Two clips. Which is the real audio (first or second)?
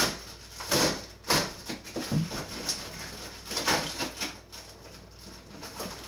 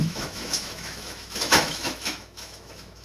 first